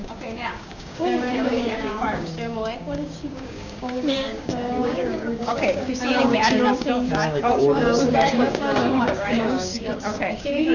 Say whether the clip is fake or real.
fake